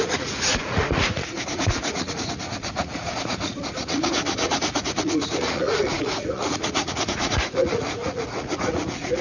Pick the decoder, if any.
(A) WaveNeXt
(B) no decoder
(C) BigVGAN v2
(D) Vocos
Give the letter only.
D